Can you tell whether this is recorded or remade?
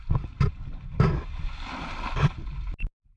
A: recorded